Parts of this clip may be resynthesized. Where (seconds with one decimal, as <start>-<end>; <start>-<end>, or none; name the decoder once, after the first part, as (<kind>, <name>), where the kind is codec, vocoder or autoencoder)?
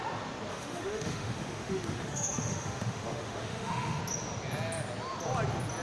0.5-4.0 (autoencoder, DAC-VAE)